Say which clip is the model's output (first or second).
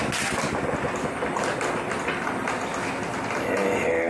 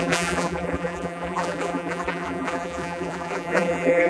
second